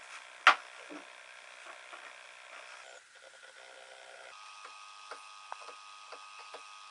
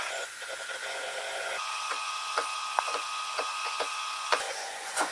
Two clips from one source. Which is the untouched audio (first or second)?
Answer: first